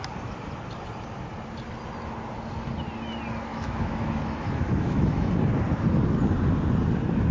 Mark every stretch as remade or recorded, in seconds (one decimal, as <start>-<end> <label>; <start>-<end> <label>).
0.0-3.5 recorded; 3.5-5.3 remade; 5.3-7.3 recorded